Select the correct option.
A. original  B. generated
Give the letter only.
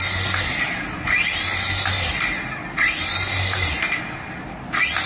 A